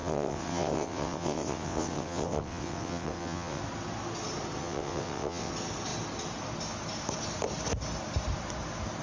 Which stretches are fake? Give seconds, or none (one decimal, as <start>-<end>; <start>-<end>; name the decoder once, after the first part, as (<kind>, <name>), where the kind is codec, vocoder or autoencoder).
0.0-3.6 (vocoder, WaveNeXt); 4.6-5.5